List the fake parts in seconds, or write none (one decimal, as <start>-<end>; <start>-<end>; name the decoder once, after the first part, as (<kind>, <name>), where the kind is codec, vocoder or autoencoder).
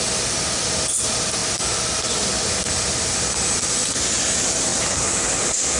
none